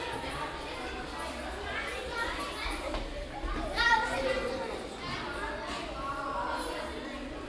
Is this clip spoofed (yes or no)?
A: no